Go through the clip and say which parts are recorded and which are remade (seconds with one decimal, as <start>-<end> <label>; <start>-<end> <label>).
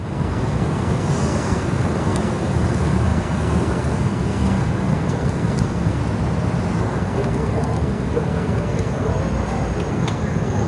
0.0-6.0 remade; 6.0-6.8 recorded; 6.8-9.1 remade; 9.1-9.9 recorded; 9.9-10.7 remade